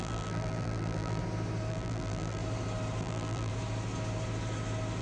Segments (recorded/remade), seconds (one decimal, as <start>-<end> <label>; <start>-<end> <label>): 0.0-1.2 remade; 1.2-1.7 recorded; 1.7-2.4 remade; 2.4-3.0 recorded; 3.0-3.5 remade; 3.5-5.0 recorded